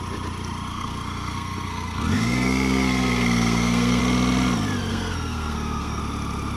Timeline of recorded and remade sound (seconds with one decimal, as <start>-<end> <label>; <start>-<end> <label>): 0.0-0.7 recorded; 0.7-4.0 remade; 4.0-4.9 recorded; 4.9-6.0 remade; 6.0-6.6 recorded